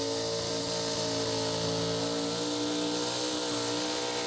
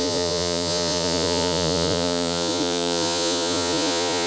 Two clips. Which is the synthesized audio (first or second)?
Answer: second